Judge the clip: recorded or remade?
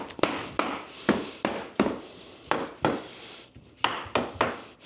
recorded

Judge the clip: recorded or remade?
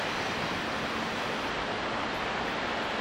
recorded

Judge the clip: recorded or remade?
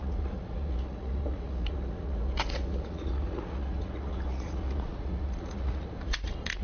remade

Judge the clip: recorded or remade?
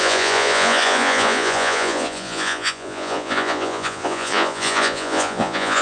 remade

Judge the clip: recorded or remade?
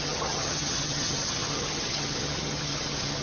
remade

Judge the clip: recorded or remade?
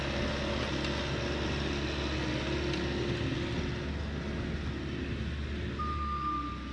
recorded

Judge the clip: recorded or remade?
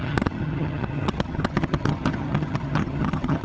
remade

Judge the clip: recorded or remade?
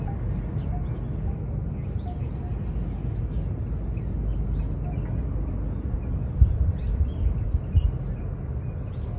recorded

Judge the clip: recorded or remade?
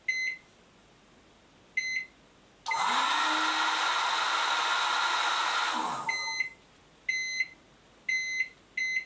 recorded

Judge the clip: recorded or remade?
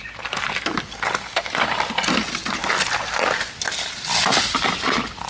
recorded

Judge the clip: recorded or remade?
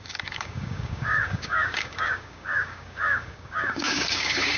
remade